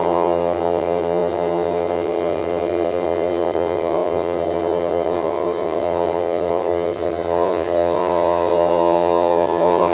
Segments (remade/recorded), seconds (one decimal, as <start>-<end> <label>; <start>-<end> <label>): 0.0-9.9 remade

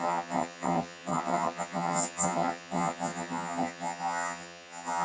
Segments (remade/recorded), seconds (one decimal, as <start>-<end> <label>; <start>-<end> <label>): 0.0-5.0 remade

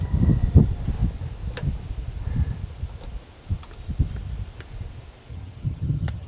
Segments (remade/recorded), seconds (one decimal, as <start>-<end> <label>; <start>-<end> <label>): 0.0-5.3 recorded; 5.3-6.3 remade

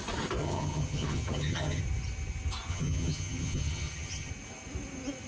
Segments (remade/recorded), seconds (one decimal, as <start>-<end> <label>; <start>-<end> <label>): 0.0-0.4 recorded; 0.4-1.8 remade; 1.8-2.7 recorded; 2.7-4.3 remade; 4.3-5.3 recorded

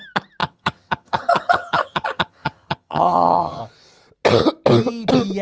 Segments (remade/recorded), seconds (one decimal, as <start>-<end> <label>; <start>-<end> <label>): 0.0-0.4 recorded; 0.4-3.6 remade; 3.6-5.4 recorded

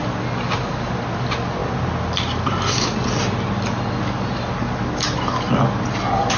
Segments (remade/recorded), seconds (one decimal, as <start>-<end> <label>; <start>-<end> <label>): 0.0-6.4 recorded

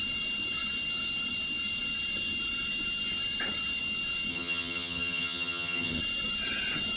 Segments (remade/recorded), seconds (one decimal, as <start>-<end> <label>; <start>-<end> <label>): 0.0-4.3 recorded; 4.3-6.0 remade; 6.0-7.0 recorded